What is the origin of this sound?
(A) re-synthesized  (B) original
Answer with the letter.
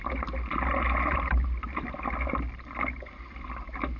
B